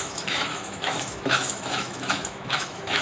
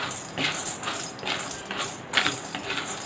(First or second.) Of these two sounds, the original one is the second